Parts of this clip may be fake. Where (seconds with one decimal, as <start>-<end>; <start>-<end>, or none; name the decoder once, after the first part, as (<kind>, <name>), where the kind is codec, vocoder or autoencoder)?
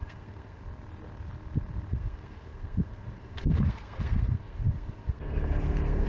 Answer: 0.0-0.6 (codec, SNAC); 1.9-6.1